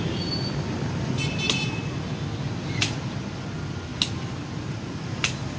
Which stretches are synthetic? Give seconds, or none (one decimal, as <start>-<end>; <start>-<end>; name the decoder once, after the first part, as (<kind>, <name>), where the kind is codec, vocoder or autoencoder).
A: none